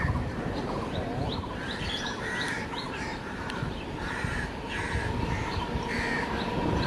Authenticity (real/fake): fake